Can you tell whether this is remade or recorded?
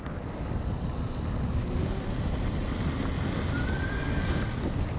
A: recorded